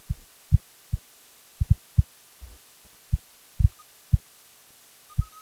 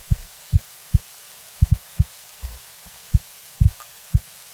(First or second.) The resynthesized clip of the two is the second